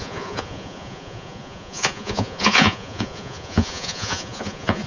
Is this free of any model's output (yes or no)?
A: no